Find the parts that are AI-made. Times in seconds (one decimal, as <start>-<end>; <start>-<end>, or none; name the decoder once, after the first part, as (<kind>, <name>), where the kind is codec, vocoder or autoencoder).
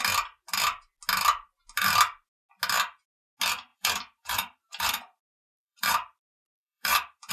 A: 3.7-7.3 (vocoder, BigVGAN v2)